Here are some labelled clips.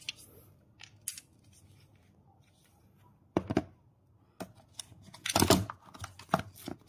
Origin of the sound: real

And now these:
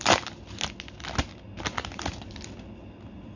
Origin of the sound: real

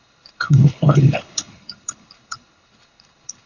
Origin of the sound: fake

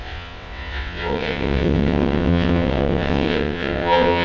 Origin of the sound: fake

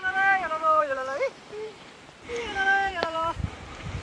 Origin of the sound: fake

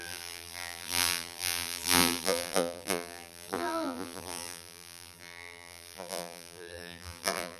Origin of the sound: fake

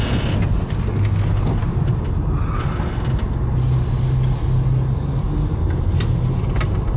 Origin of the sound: real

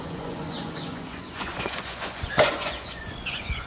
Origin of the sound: fake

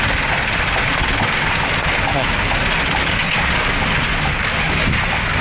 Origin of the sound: real